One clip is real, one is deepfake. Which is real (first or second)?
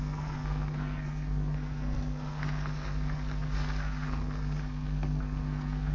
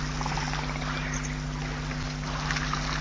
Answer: second